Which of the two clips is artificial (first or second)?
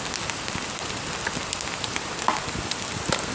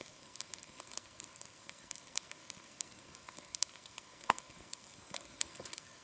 second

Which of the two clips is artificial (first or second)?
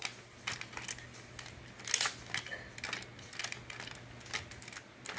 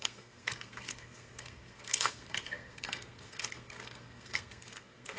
second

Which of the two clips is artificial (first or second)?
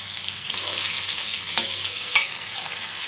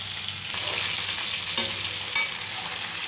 first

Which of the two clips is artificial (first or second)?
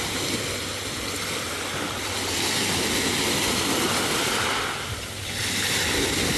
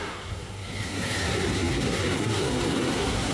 second